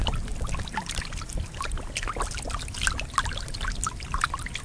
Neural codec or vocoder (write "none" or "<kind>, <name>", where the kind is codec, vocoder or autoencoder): none